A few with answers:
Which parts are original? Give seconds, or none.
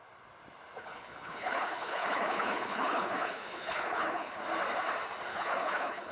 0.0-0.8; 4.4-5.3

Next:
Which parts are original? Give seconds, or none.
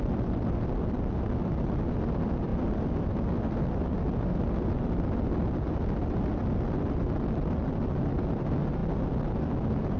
0.0-10.0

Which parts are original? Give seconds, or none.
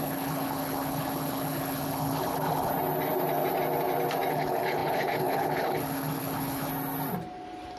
2.7-4.3; 6.7-7.8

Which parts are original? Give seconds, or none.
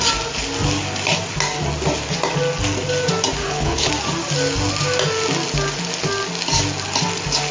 0.0-3.4; 3.9-7.5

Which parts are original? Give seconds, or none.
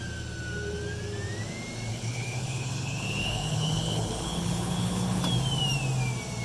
0.0-1.9; 5.2-6.4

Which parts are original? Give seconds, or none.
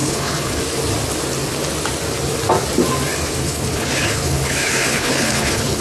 0.6-3.4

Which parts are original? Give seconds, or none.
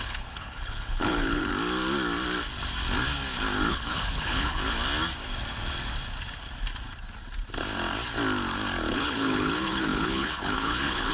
1.5-3.7; 4.6-8.9